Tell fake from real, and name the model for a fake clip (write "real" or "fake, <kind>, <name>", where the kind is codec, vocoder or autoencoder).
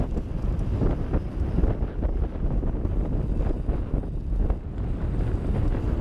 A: real